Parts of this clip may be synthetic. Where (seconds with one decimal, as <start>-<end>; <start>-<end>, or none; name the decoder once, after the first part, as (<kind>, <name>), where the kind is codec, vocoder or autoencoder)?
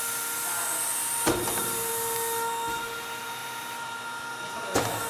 3.4-4.1 (vocoder, BigVGAN v2)